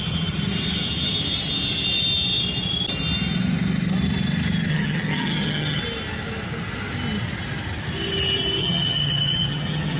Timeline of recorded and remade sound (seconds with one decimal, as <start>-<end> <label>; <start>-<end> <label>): 0.0-4.7 recorded; 4.7-5.8 remade; 5.8-8.6 recorded; 8.6-10.0 remade